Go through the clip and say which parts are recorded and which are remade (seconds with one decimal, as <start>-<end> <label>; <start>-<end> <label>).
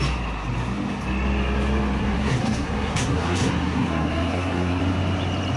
0.0-2.0 recorded; 2.0-4.8 remade; 4.8-5.6 recorded